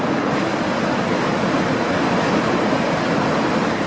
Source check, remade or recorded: remade